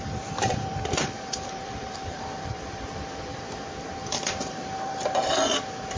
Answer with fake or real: fake